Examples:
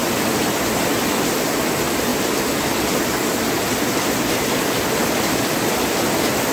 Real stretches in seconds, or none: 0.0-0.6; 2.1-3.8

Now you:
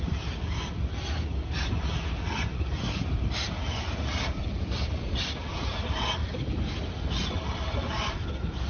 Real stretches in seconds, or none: 0.0-2.5; 5.1-8.7

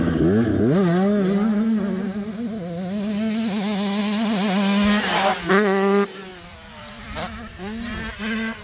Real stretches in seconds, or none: 0.0-6.3; 7.4-8.6

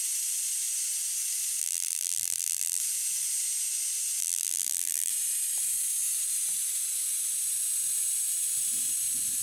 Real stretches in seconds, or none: 0.0-1.6; 2.8-4.2; 5.1-9.4

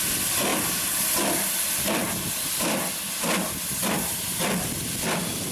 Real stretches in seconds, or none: 0.0-0.5; 1.0-5.5